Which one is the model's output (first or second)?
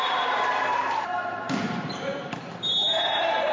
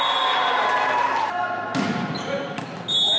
first